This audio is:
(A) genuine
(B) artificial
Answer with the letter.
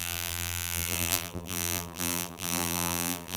B